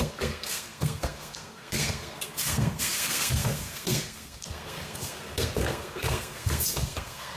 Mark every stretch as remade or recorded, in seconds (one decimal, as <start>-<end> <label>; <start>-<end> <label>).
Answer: 0.0-7.4 remade